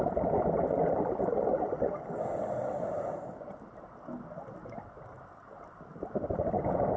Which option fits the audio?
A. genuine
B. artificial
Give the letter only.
A